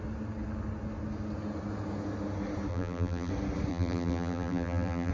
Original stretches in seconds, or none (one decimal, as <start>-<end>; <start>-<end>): 0.0-2.7; 3.3-3.7